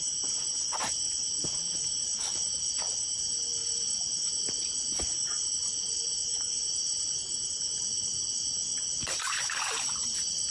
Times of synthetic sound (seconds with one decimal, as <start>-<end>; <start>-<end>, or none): none